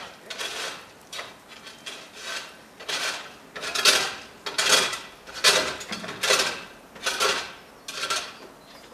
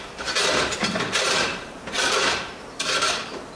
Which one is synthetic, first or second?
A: second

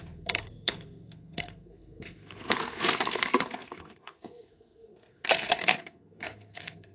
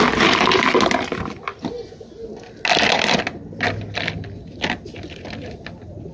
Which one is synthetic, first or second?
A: first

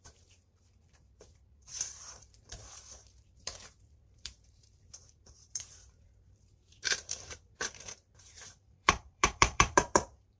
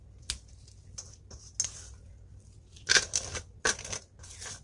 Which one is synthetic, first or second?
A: first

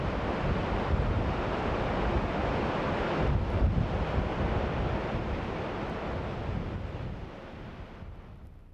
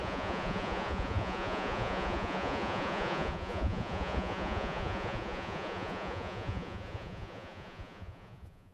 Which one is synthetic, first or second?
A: second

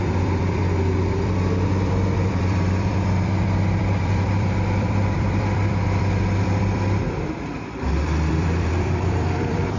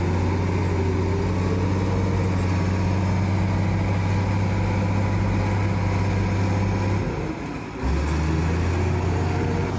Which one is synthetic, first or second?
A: first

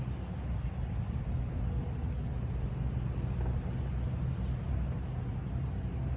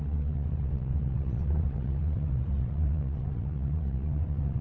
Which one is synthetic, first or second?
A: second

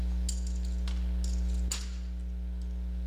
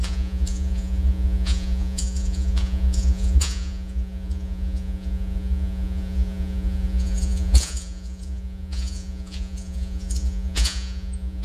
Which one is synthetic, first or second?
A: second